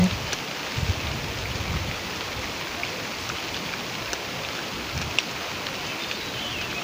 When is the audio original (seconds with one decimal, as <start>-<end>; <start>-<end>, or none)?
0.0-6.8